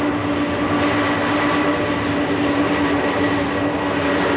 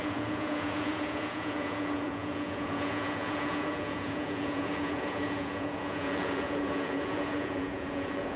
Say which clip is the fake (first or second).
second